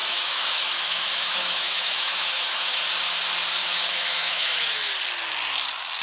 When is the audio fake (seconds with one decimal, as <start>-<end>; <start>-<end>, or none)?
0.0-2.8; 3.6-4.9